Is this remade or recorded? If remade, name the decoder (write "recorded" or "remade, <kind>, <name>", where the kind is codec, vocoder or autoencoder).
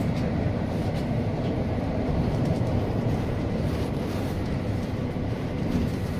remade, vocoder, BigVGAN v2